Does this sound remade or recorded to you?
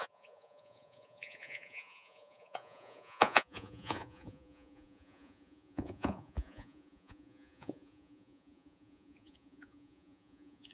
remade